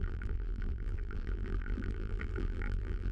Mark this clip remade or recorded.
remade